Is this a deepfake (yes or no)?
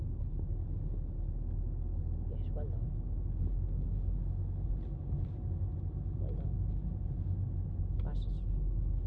no